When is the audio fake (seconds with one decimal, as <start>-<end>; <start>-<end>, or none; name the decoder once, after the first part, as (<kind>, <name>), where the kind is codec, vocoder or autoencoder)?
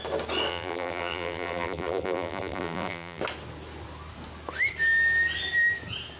0.5-3.2 (vocoder, BigVGAN v2)